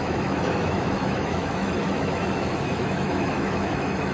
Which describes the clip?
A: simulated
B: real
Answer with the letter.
A